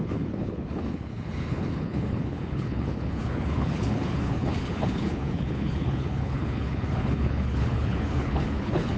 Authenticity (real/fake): fake